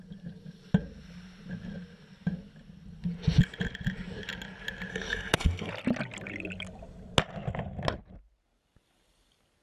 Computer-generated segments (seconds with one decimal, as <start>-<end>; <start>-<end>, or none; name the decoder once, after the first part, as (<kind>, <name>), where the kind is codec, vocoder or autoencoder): 4.9-5.7 (codec, SNAC)

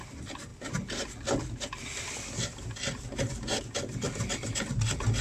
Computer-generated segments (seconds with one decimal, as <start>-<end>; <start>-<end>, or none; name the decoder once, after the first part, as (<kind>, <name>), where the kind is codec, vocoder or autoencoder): none

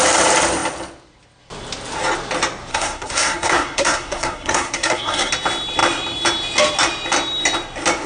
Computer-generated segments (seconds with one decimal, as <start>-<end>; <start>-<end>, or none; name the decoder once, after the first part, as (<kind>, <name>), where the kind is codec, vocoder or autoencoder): 2.7-5.3 (codec, SNAC)

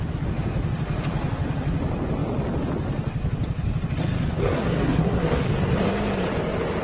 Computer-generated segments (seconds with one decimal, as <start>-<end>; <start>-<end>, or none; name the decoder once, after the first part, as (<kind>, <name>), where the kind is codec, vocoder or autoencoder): 4.4-5.5 (codec, SNAC)

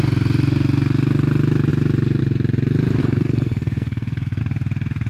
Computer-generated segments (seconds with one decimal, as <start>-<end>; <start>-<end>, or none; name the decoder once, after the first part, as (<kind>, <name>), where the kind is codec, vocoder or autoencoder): 3.0-4.4 (codec, SNAC)

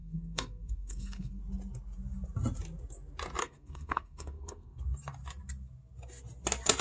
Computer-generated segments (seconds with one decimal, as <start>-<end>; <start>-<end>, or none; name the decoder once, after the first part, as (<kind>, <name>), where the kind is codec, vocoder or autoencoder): 0.0-1.4 (codec, SNAC); 3.4-4.8